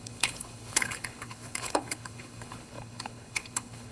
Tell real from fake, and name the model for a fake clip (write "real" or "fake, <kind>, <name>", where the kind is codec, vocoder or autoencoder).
fake, codec, HILCodec